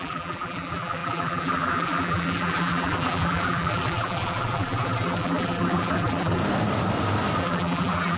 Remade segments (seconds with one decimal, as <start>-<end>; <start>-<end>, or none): 0.0-6.4; 7.4-8.2